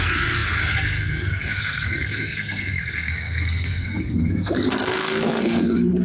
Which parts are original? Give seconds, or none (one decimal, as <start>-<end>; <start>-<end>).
none